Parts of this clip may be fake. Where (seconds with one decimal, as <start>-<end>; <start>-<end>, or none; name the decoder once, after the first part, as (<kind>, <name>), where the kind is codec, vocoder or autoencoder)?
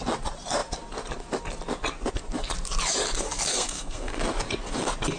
3.5-4.2 (codec, SNAC)